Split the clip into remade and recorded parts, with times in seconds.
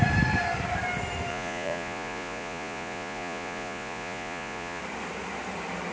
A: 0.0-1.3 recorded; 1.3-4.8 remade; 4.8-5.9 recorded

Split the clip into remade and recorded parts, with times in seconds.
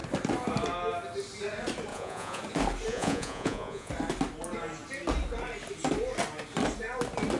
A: 0.0-1.9 recorded; 1.9-2.4 remade; 2.4-2.9 recorded; 2.9-3.9 remade; 3.9-7.4 recorded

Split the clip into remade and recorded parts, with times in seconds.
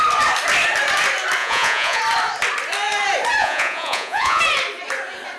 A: 0.0-1.4 recorded; 1.4-2.0 remade; 2.0-3.4 recorded; 3.4-4.4 remade; 4.4-5.4 recorded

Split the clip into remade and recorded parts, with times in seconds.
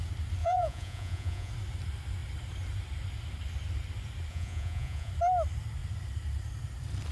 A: 0.0-0.4 recorded; 0.4-1.5 remade; 1.5-4.3 recorded; 4.3-5.1 remade; 5.1-7.1 recorded